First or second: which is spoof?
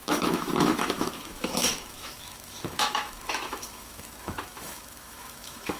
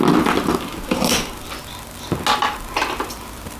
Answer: first